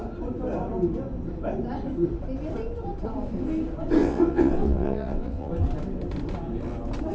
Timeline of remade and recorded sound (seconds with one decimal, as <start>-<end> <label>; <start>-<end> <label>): 0.0-4.0 recorded; 4.0-5.5 remade; 5.5-7.1 recorded